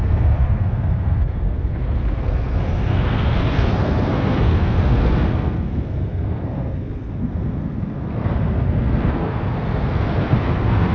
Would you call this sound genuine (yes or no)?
no